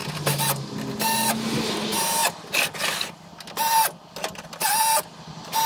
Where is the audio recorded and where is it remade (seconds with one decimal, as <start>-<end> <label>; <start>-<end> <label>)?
0.0-5.7 recorded